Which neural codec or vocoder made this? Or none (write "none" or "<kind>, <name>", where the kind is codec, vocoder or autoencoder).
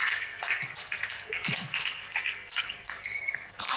codec, SNAC